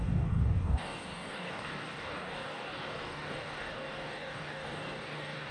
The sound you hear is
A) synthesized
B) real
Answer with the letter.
A